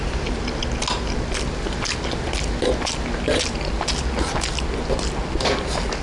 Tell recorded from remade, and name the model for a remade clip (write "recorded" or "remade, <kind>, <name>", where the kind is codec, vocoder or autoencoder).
recorded